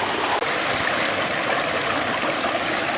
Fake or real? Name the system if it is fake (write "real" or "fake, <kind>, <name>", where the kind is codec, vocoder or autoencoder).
real